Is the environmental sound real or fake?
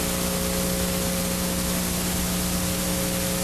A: real